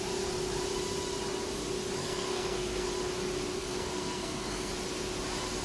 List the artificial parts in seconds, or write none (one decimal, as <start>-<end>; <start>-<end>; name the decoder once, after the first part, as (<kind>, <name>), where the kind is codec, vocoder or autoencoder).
2.0-2.9 (codec, SNAC); 3.6-4.7